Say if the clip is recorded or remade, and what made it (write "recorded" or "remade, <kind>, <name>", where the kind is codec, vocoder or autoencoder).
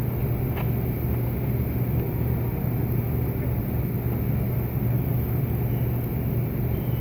recorded